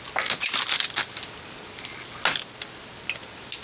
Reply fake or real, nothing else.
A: real